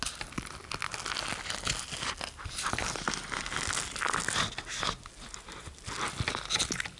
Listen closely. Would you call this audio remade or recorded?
recorded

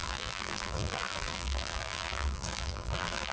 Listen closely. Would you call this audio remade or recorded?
remade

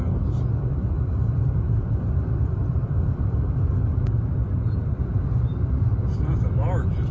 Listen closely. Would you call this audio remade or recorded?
remade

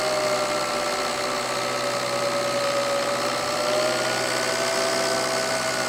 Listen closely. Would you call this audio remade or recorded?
recorded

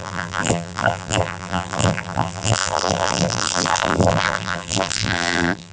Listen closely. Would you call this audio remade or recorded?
remade